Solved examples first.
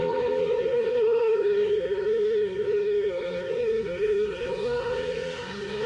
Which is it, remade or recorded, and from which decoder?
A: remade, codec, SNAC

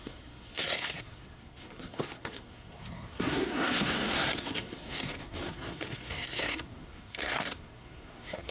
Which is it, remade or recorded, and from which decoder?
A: remade, codec, SNAC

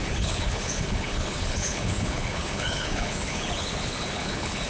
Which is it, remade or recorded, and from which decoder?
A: remade, codec, HILCodec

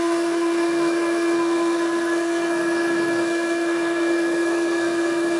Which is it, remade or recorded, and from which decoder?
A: remade, codec, SNAC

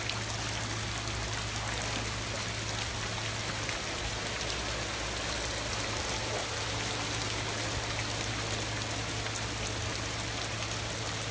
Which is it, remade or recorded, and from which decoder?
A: recorded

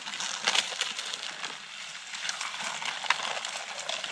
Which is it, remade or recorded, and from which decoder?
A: recorded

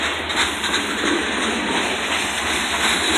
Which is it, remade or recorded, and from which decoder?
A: recorded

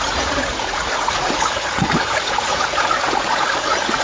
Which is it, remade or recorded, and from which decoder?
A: remade, vocoder, Vocos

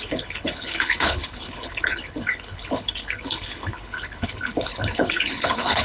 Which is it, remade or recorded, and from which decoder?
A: remade, codec, HILCodec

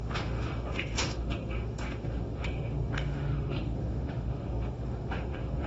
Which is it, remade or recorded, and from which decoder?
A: remade, autoencoder, DAC-VAE